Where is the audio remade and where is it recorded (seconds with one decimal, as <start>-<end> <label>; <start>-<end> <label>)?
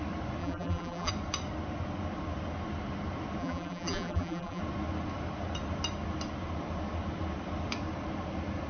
0.0-0.4 recorded; 0.4-1.1 remade; 1.1-3.4 recorded; 3.4-4.6 remade; 4.6-8.7 recorded